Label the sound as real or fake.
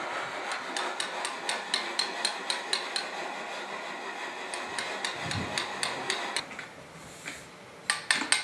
real